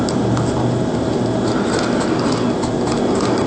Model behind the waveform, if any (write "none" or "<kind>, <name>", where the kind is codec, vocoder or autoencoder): none